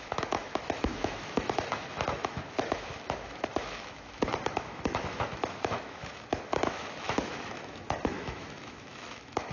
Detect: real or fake fake